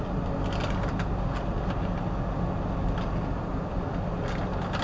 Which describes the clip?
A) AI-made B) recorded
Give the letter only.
B